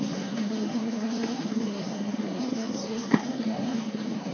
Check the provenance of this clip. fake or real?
fake